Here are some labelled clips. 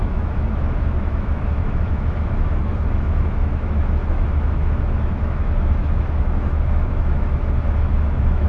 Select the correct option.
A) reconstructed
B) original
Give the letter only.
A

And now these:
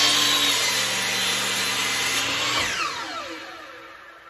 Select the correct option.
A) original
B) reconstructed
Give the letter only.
A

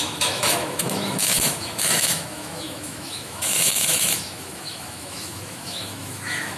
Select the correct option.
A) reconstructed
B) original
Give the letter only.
A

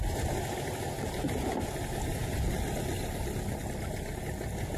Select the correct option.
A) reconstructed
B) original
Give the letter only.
B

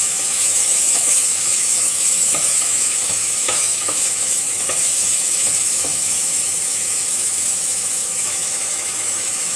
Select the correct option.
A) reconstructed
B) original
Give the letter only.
A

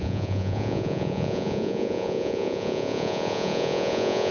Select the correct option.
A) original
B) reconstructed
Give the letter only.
B